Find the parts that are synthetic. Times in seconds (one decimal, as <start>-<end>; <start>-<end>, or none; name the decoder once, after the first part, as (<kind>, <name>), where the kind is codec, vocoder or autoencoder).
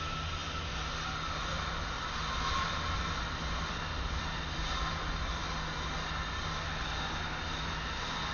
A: none